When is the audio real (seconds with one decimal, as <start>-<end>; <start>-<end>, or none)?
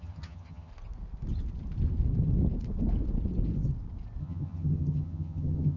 0.7-4.2